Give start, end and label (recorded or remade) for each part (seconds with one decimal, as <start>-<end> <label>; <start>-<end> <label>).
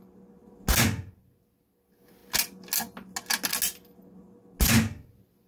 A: 0.0-5.5 recorded